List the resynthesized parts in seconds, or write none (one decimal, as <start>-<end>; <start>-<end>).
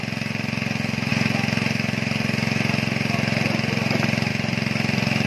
none